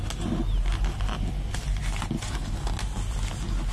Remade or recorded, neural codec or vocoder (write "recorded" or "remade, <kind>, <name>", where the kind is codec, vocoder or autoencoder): recorded